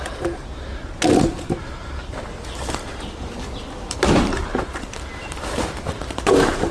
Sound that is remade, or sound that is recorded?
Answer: remade